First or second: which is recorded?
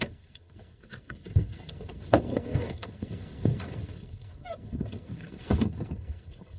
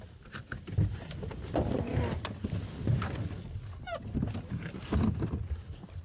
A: second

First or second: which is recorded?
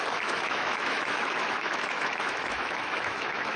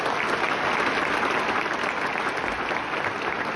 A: second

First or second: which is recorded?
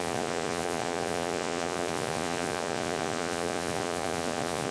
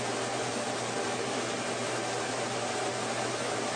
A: second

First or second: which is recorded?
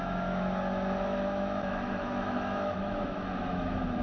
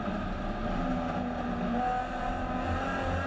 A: second